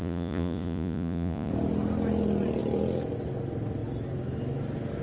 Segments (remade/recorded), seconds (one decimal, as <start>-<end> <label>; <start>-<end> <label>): 0.0-1.5 remade; 1.5-5.0 recorded